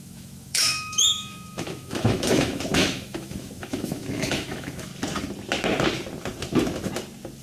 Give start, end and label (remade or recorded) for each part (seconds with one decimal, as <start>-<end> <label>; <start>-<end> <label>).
0.0-4.9 remade; 4.9-7.4 recorded